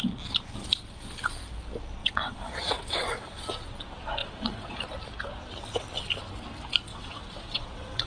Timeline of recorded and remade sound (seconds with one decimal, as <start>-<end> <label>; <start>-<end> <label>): 0.0-2.0 recorded; 2.0-3.4 remade; 3.4-4.2 recorded; 4.2-4.7 remade; 4.7-6.9 recorded; 6.9-8.1 remade